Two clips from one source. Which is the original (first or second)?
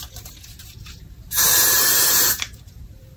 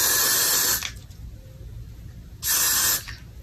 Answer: second